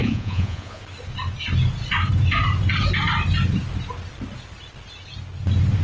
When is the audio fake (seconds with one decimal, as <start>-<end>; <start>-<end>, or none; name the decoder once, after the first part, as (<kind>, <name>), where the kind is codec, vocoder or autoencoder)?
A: 0.0-0.8 (vocoder, Vocos)